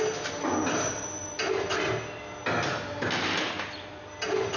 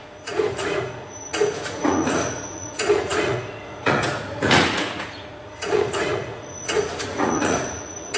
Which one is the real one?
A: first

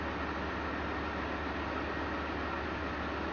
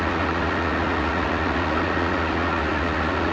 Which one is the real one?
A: first